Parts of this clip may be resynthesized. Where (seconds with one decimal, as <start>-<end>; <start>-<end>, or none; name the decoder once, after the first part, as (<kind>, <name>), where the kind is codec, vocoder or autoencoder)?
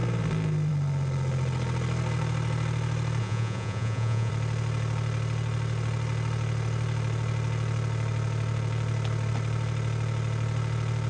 3.2-4.3 (vocoder, Vocos)